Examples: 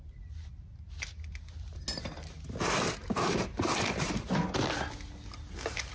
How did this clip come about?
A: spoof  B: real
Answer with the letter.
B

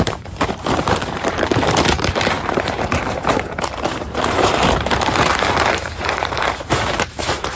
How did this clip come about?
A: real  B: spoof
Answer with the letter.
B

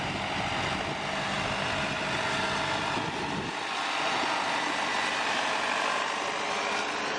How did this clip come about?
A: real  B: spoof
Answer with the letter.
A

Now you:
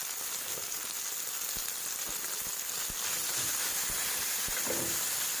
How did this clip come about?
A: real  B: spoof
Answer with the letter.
A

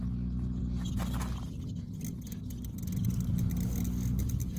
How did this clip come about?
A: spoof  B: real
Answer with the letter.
B